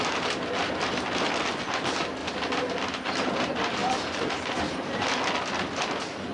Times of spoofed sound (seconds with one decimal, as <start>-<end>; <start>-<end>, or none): 3.8-5.1